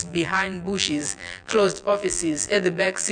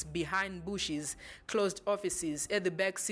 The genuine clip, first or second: second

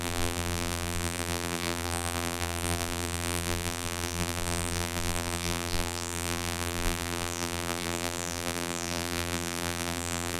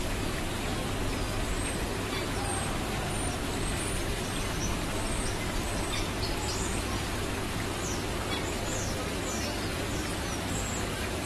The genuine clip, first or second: second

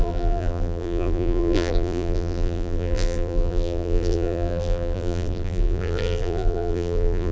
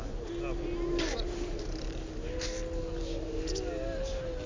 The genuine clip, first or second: second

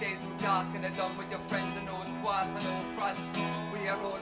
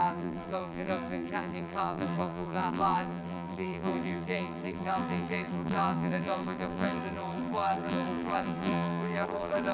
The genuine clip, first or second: first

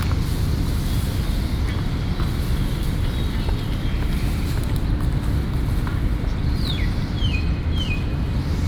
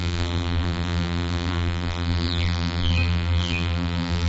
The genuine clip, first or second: first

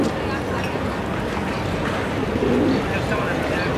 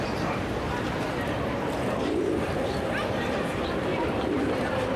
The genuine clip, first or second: first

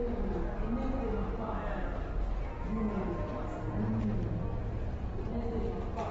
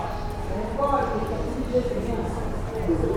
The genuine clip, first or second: first